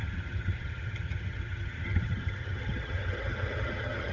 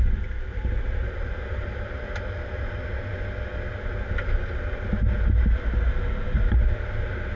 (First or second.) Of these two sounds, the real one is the second